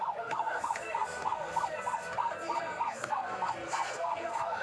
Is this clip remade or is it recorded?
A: remade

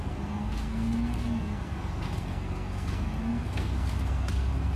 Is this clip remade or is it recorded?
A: remade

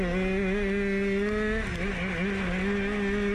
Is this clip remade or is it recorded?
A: recorded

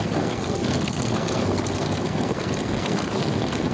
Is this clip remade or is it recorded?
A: remade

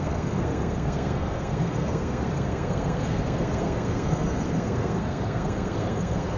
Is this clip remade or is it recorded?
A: remade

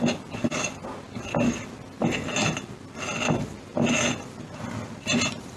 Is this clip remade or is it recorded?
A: recorded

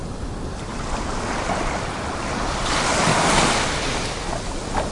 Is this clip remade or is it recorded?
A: recorded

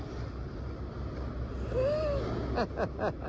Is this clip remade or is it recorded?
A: recorded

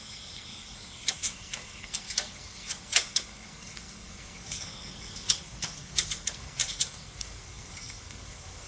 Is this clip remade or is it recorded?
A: remade